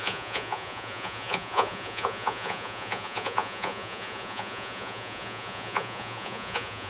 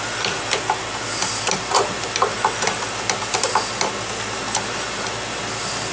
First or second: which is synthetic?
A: first